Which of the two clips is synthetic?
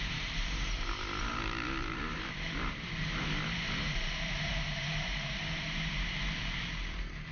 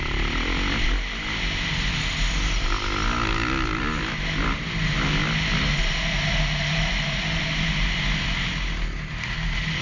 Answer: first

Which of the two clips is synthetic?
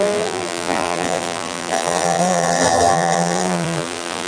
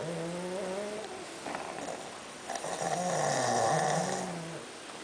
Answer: first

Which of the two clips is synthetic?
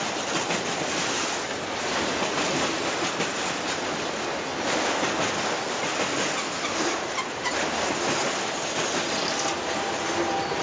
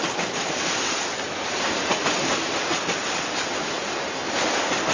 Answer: second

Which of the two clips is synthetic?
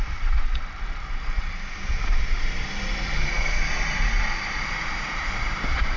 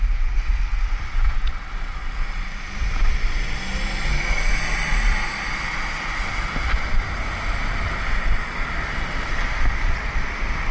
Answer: first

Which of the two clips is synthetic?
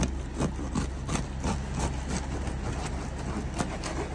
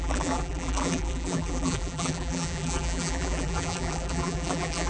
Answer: second